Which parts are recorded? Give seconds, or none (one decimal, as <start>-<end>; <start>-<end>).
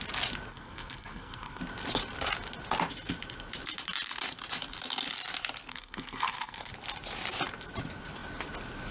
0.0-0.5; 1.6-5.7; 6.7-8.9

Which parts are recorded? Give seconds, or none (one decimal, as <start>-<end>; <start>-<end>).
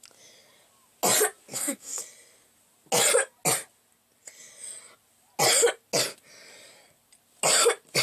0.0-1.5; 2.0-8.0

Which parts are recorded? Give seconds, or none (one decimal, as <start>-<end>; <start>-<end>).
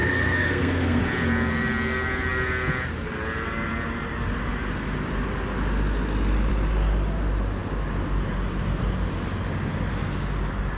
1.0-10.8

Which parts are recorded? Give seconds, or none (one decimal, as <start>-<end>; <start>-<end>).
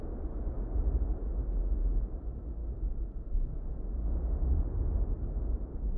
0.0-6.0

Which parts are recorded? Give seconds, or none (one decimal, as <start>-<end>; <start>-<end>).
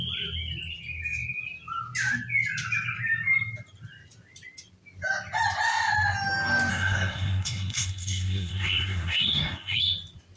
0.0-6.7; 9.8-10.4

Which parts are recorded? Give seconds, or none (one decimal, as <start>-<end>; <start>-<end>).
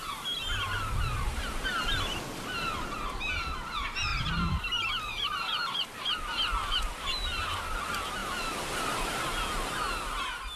0.0-10.6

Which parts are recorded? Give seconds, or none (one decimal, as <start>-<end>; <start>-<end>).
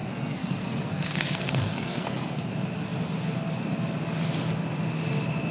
2.5-5.5